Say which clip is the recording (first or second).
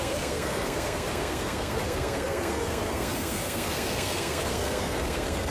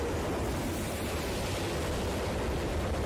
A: second